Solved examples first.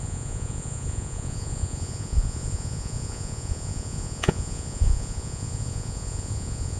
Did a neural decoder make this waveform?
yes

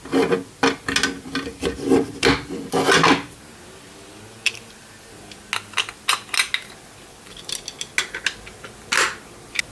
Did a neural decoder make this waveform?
no